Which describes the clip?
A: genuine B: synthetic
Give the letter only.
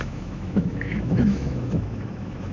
B